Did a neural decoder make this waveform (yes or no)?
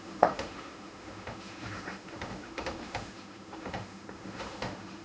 yes